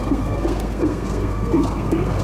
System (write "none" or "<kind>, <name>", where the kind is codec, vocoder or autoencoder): codec, SNAC